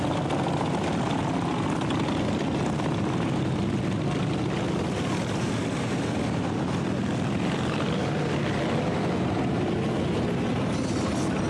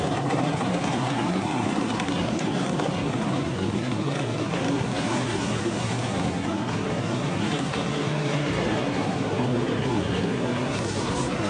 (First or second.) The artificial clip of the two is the second